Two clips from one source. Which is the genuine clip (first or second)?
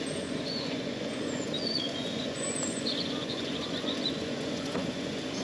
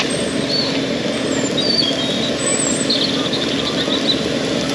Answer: second